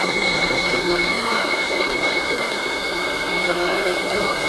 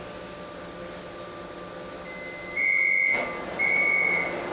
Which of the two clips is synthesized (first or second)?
first